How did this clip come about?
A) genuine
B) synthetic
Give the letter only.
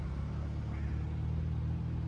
A